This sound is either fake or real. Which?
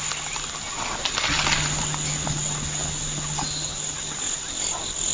real